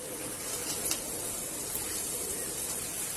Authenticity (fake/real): real